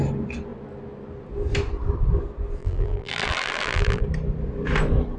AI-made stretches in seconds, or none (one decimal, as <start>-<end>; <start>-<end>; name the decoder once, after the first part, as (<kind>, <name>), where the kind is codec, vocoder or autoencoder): 2.6-4.0 (vocoder, BigVGAN v2)